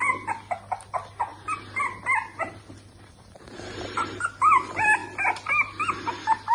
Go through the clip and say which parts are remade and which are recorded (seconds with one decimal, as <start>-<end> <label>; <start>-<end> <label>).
0.0-6.5 recorded